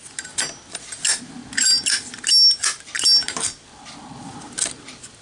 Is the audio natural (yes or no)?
yes